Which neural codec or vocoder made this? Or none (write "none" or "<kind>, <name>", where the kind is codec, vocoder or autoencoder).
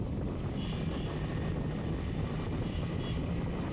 none